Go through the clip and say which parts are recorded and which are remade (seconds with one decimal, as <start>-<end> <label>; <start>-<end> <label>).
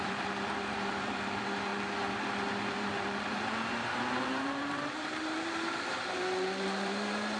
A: 0.0-1.7 remade; 1.7-2.5 recorded; 2.5-7.4 remade